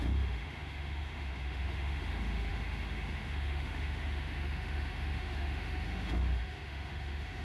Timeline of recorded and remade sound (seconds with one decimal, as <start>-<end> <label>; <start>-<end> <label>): 0.0-7.4 remade